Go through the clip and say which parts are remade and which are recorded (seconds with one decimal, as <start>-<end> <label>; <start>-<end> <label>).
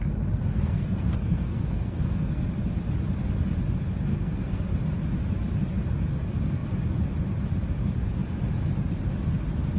0.0-0.5 recorded; 0.5-2.5 remade; 2.5-4.1 recorded; 4.1-4.6 remade; 4.6-9.8 recorded